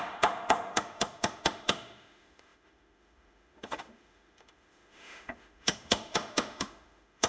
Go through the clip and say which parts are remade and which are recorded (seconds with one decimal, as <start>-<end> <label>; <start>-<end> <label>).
0.0-7.3 remade